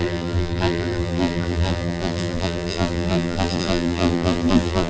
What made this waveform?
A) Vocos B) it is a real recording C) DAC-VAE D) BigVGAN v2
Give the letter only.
D